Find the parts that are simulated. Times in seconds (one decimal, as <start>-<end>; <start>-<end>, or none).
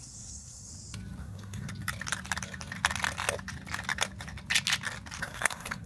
0.0-0.7; 1.2-1.7; 5.2-5.9